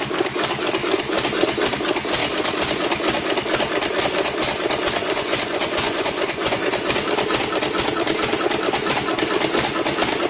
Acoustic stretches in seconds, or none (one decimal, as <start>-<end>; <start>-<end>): 0.0-5.0; 6.6-10.3